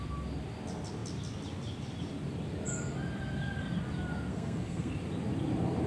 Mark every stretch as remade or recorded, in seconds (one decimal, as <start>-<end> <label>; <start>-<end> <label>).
0.0-4.3 recorded; 4.3-4.9 remade; 4.9-5.9 recorded